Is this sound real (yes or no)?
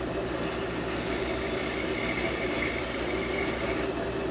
yes